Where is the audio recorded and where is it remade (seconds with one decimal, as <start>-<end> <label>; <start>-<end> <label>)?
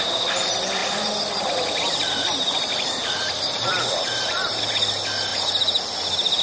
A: 0.0-0.8 recorded; 0.8-4.6 remade; 4.6-6.4 recorded